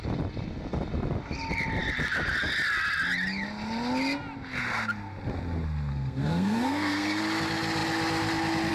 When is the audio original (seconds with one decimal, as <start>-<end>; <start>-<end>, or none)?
0.0-5.9; 7.2-8.7